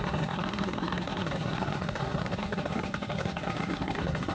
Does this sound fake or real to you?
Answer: fake